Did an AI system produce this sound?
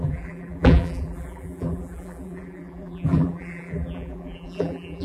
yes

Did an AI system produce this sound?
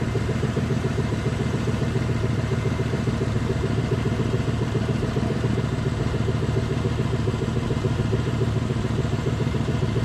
yes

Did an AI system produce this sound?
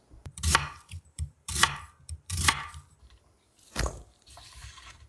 yes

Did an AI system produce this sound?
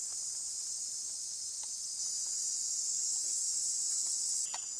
no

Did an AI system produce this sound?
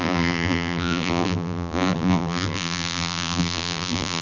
yes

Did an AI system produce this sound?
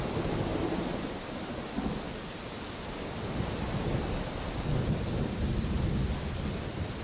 no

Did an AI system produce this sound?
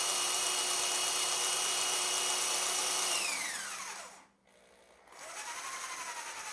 no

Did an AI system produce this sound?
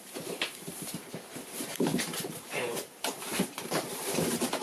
yes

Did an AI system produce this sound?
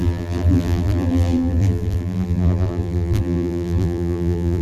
yes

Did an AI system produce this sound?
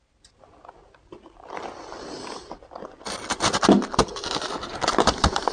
yes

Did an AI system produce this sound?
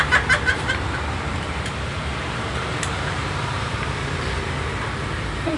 yes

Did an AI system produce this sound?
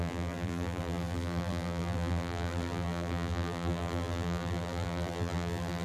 yes